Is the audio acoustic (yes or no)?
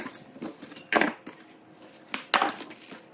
yes